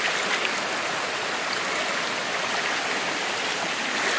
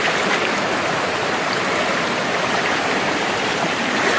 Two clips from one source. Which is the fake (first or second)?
second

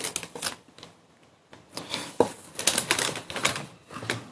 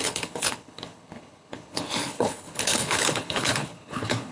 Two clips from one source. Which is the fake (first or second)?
second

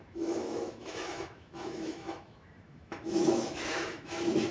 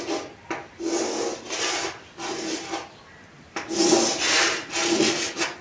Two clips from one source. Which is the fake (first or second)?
first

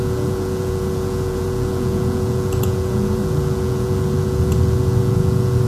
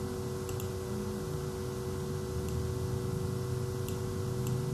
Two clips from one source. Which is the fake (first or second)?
first